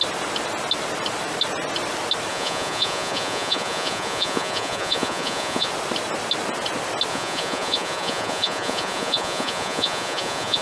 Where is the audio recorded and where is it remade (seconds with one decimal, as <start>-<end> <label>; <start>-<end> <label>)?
0.0-2.3 recorded; 2.3-5.7 remade; 5.7-7.1 recorded; 7.1-10.6 remade